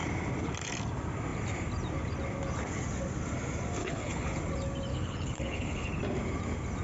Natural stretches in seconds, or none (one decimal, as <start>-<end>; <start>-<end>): 0.0-3.8; 4.4-4.9; 6.0-6.8